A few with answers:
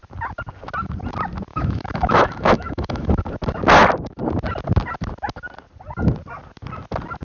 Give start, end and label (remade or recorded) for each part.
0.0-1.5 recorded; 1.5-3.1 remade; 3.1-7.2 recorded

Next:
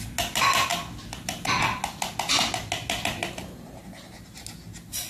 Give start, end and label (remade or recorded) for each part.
0.0-5.1 recorded